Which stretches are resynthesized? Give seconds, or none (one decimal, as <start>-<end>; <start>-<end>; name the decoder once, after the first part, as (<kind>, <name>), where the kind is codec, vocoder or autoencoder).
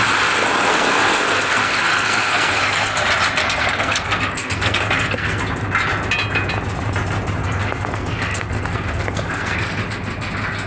0.7-3.0 (codec, SNAC); 3.4-5.4; 7.4-9.8